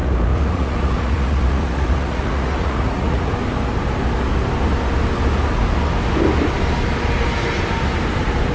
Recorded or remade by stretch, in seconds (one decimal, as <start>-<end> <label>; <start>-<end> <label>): 0.0-3.3 remade; 3.3-8.5 recorded